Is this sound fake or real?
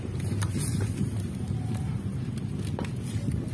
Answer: real